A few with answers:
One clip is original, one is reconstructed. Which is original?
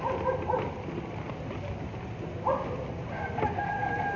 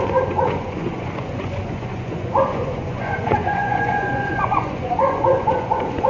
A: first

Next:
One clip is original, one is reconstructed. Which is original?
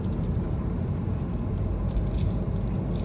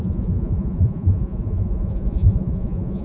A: first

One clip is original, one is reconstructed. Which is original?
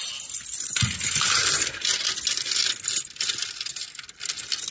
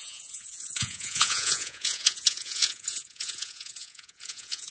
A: first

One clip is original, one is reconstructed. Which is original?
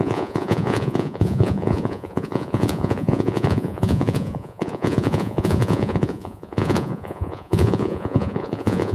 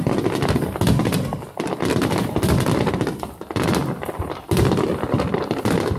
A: second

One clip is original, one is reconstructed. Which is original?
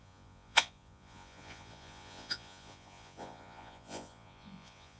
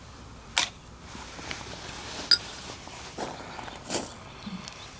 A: second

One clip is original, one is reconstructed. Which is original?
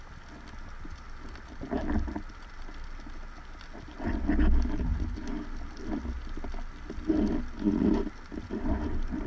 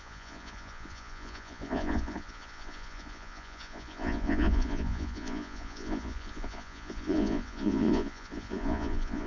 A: first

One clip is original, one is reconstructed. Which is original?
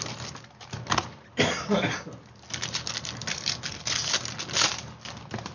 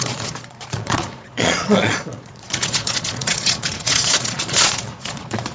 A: first